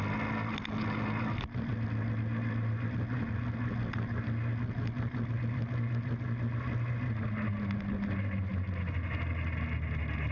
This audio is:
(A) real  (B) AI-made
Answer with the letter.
A